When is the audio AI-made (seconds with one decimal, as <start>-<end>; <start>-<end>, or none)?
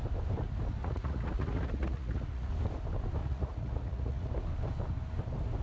0.8-2.5; 3.2-4.3